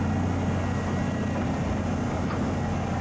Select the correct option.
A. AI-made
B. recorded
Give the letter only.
B